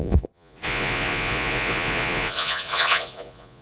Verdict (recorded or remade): remade